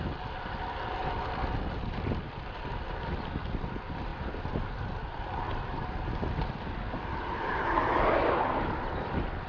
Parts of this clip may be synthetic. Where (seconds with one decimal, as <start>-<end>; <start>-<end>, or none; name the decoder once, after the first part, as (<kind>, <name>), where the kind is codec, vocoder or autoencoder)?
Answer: none